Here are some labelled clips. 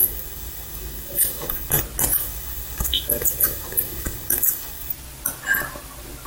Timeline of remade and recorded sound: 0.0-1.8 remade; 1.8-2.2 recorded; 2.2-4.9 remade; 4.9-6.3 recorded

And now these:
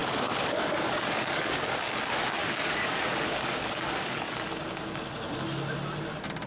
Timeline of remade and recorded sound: 0.0-1.6 remade; 1.6-2.4 recorded; 2.4-4.5 remade; 4.5-6.5 recorded

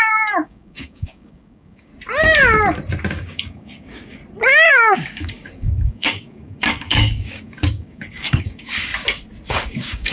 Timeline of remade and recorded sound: 0.0-1.9 remade; 1.9-3.1 recorded; 3.1-4.2 remade; 4.2-4.7 recorded; 4.7-8.9 remade; 8.9-9.5 recorded; 9.5-10.1 remade

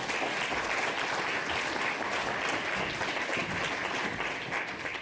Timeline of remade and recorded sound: 0.0-5.0 recorded

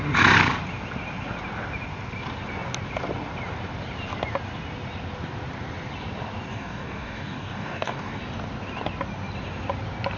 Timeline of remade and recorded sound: 0.0-6.5 recorded; 6.5-8.2 remade; 8.2-10.2 recorded